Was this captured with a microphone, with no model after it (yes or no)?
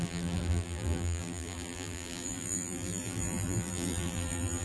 no